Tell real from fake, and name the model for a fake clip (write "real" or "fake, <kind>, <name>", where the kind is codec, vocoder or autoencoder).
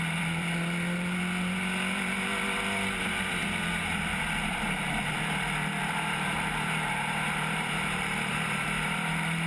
fake, vocoder, BigVGAN v2